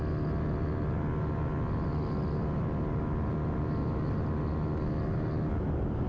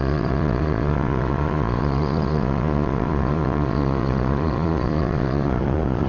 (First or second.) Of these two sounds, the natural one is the first